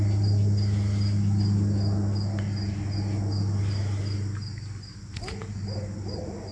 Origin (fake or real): real